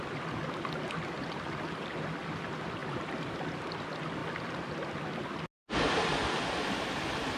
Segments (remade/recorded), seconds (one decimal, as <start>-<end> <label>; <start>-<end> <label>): 0.0-7.4 recorded